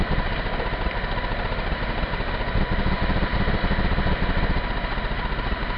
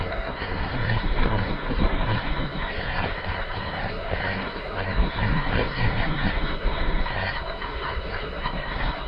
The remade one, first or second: second